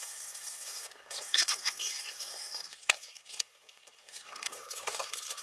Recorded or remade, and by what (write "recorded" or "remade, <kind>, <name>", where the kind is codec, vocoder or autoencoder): remade, codec, SNAC